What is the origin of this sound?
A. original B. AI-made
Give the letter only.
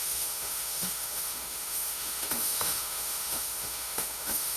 B